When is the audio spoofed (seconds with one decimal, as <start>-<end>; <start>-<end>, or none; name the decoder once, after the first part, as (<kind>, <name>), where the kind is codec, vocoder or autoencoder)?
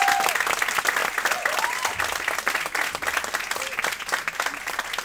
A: none